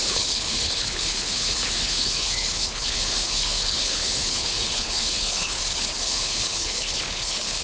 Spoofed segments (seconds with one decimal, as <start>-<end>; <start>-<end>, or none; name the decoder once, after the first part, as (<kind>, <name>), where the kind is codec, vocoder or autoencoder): 0.0-7.6 (codec, HILCodec)